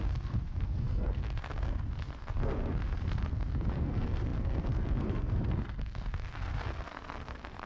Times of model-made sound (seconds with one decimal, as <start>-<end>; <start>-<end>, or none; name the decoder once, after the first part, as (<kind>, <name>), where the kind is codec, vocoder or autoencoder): 0.0-7.7 (codec, SNAC)